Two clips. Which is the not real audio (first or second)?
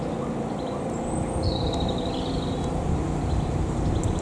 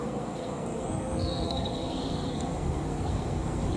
second